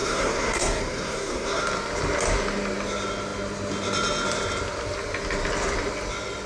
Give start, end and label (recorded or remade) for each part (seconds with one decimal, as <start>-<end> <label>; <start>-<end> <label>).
0.0-1.6 remade; 1.6-6.5 recorded